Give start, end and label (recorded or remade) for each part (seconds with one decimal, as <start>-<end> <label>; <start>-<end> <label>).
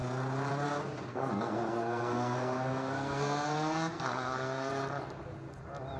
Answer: 0.0-1.1 recorded; 1.1-4.7 remade; 4.7-6.0 recorded